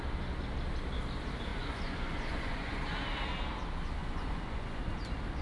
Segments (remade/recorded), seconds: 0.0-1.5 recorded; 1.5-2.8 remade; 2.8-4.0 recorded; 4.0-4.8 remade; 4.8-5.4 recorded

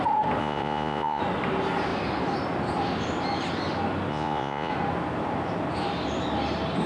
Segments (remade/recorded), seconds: 0.0-0.4 recorded; 0.4-1.2 remade; 1.2-4.1 recorded; 4.1-4.7 remade; 4.7-6.9 recorded

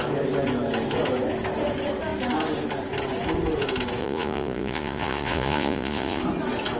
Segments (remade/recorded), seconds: 0.0-4.0 recorded; 4.0-6.2 remade; 6.2-6.8 recorded

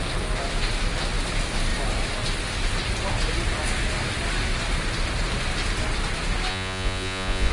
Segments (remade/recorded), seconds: 0.0-6.5 recorded; 6.5-7.5 remade

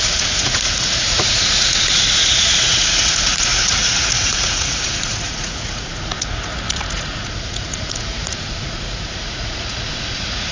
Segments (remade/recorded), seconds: 0.0-10.5 remade

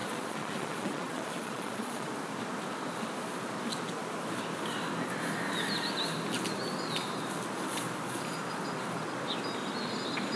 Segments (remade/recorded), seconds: 0.0-2.1 remade; 2.1-10.4 recorded